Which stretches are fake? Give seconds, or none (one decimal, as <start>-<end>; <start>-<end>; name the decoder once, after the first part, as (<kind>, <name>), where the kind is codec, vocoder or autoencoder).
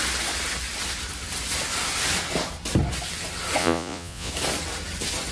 3.6-4.3 (vocoder, Vocos)